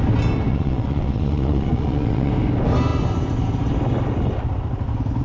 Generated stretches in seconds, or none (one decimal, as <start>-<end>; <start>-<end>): 0.5-2.3